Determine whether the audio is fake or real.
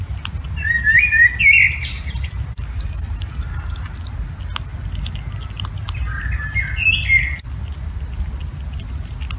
real